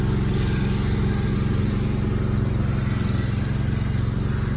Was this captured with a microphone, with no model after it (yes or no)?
yes